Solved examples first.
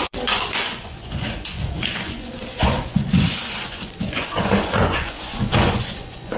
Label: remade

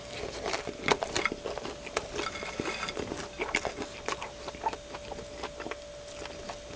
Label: recorded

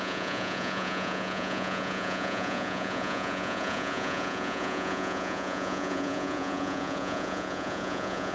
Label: remade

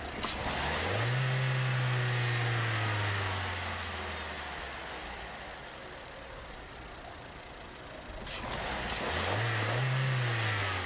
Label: recorded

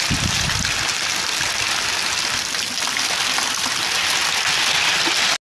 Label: recorded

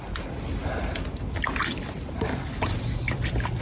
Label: recorded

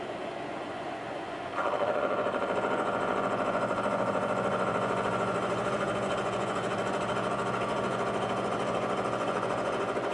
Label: remade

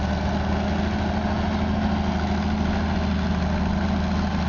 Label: recorded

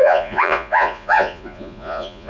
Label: remade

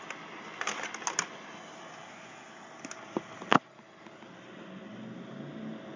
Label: recorded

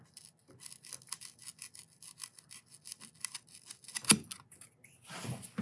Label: recorded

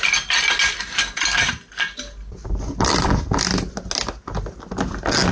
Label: recorded